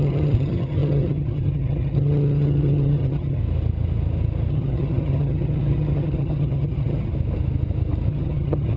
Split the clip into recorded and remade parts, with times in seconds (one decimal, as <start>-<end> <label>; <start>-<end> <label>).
0.0-3.4 remade; 3.4-4.5 recorded; 4.5-7.1 remade; 7.1-8.1 recorded; 8.1-8.8 remade

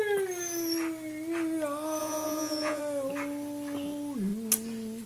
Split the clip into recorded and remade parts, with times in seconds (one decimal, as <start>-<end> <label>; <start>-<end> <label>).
0.0-2.0 recorded; 2.0-2.8 remade; 2.8-5.1 recorded

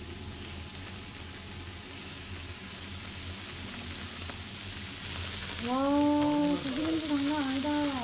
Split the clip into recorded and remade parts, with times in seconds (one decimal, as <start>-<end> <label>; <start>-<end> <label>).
0.0-8.0 recorded

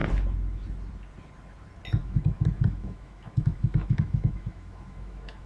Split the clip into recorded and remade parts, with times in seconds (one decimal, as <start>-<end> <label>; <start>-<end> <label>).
0.0-2.0 recorded; 2.0-5.5 remade